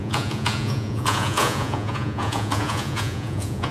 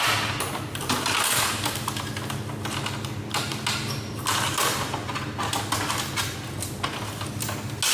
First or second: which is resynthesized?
first